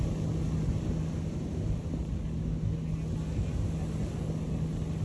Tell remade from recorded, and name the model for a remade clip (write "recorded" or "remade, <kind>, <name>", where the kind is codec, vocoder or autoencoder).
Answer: recorded